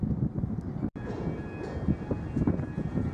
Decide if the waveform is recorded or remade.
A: recorded